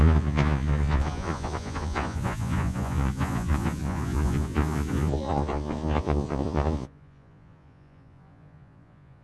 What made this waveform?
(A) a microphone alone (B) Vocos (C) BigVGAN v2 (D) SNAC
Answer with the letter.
B